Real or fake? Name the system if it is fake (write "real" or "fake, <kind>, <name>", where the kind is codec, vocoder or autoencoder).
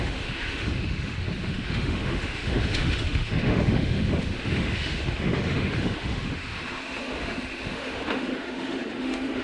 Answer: fake, autoencoder, DAC-VAE